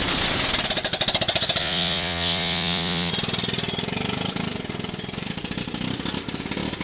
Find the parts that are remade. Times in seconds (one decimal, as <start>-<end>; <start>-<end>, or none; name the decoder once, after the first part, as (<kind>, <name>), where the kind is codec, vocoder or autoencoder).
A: 1.6-3.1 (vocoder, Vocos)